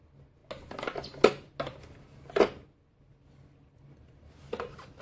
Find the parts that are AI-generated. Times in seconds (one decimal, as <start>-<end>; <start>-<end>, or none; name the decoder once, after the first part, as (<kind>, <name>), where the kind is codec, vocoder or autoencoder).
none